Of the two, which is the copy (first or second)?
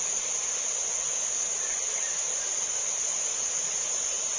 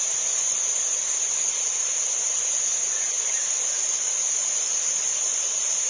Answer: second